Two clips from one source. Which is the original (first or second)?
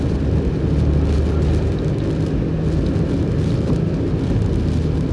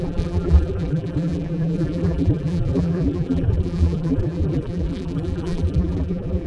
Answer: first